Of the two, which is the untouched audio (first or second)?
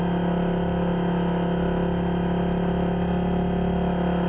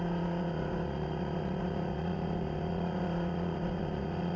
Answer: first